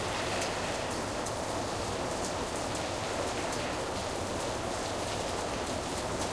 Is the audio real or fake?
real